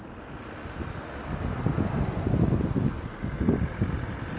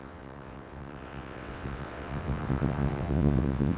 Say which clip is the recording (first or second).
first